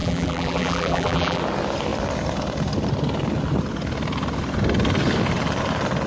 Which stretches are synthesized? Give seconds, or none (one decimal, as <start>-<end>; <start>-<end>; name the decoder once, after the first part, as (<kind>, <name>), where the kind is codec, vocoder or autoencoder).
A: 0.0-1.4 (vocoder, BigVGAN v2)